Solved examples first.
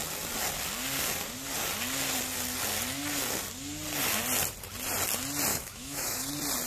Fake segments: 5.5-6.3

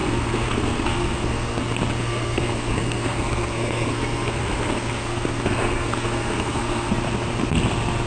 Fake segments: 0.0-1.6; 2.0-6.9

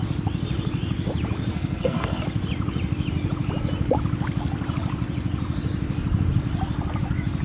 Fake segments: 1.5-2.2

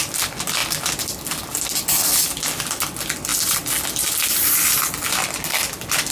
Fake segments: none

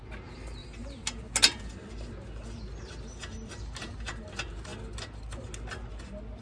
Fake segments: none